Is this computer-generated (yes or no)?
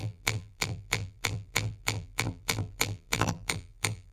yes